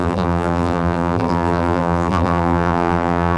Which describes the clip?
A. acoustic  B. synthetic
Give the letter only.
B